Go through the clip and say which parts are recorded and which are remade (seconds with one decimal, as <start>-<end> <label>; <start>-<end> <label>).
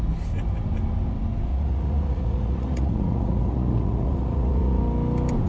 0.0-1.5 recorded; 1.5-4.8 remade; 4.8-5.5 recorded